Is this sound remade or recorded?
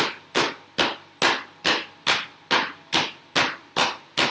recorded